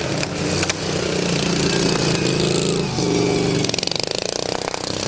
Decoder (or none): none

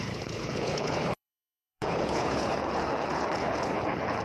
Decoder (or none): codec, HILCodec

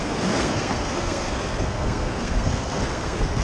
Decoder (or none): codec, SNAC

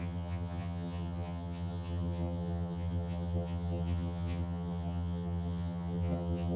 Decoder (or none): vocoder, HiFi-GAN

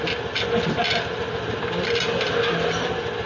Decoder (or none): none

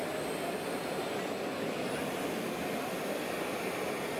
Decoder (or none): none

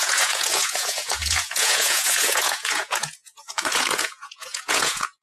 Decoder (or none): vocoder, Vocos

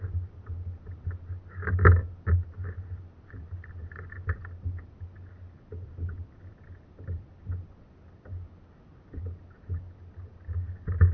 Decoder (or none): none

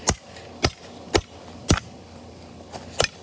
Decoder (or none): none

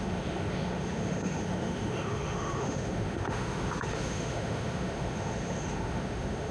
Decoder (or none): autoencoder, DAC-VAE